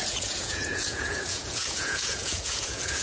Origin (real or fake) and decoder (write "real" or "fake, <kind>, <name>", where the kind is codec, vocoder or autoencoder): fake, vocoder, Vocos